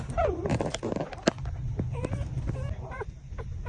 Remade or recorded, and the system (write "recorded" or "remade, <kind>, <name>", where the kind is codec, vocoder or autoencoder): recorded